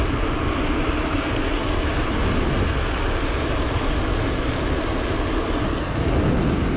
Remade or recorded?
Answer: recorded